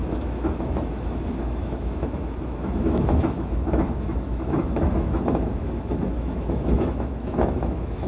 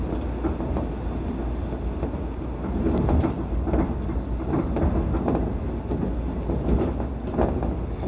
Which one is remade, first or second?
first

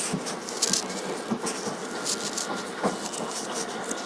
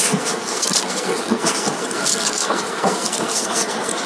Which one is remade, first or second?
second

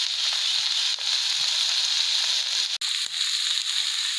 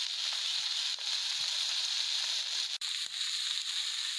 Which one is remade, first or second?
second